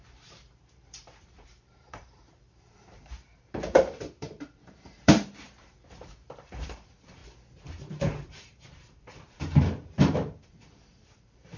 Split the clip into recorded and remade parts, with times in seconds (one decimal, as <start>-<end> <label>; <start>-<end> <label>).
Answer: 0.0-7.2 remade; 7.2-8.3 recorded; 8.3-11.6 remade